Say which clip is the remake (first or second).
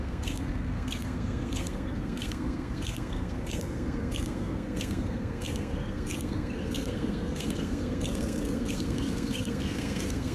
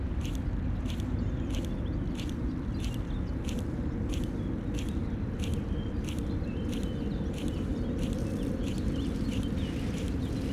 first